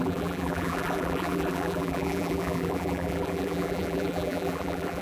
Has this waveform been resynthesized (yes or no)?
yes